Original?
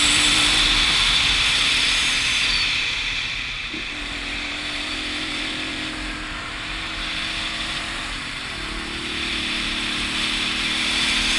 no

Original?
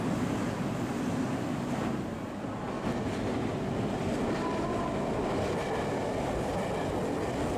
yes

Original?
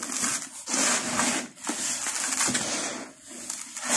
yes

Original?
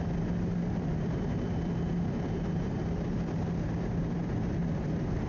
no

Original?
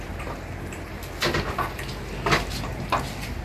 yes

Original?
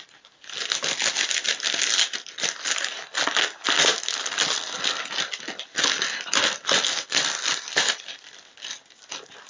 yes